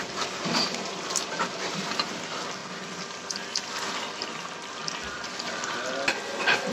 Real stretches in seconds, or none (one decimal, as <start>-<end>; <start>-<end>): 0.0-6.7